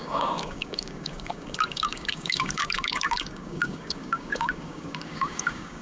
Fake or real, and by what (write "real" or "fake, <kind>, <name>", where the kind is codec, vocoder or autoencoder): fake, codec, DAC